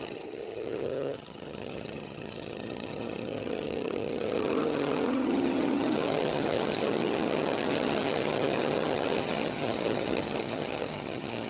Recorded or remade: remade